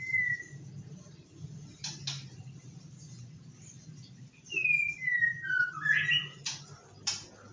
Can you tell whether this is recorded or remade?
recorded